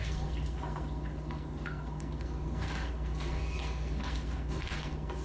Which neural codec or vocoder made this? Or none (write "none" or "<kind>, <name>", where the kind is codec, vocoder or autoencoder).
codec, SNAC